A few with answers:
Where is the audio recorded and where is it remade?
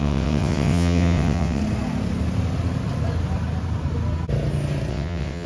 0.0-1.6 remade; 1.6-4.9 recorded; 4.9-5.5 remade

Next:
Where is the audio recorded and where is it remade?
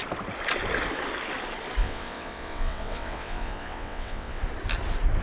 0.0-1.8 recorded; 1.8-4.4 remade; 4.4-5.2 recorded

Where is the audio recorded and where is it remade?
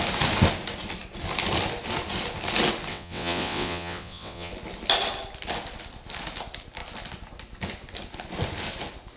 0.0-2.9 recorded; 2.9-4.5 remade; 4.5-9.2 recorded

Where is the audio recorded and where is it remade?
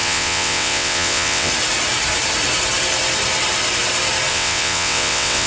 0.0-1.5 remade; 1.5-4.3 recorded; 4.3-5.5 remade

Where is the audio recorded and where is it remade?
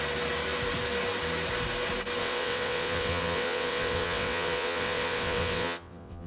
0.0-2.2 recorded; 2.2-6.3 remade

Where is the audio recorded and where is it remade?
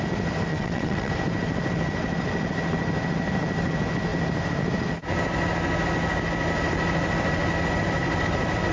0.0-0.5 recorded; 0.5-1.1 remade; 1.1-8.7 recorded